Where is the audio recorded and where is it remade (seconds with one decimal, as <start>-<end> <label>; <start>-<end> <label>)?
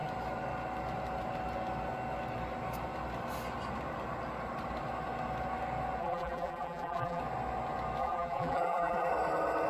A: 0.0-6.0 recorded; 6.0-7.2 remade; 7.2-8.0 recorded; 8.0-9.1 remade; 9.1-9.7 recorded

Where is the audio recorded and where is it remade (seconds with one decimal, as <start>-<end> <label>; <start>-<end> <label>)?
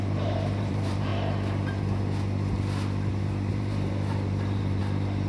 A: 0.0-1.1 remade; 1.1-3.5 recorded; 3.5-4.8 remade; 4.8-5.3 recorded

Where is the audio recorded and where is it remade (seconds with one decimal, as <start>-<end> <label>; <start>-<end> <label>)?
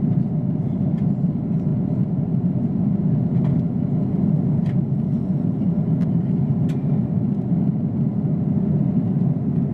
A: 0.0-9.7 recorded